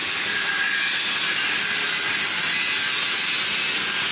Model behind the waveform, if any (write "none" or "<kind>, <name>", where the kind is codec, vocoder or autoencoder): none